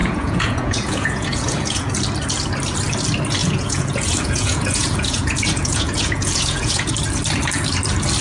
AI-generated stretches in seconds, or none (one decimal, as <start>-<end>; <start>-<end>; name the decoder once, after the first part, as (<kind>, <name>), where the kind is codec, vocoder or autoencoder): 0.0-1.9 (vocoder, Vocos); 3.4-6.9